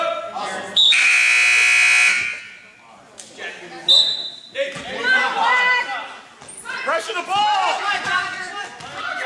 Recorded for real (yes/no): yes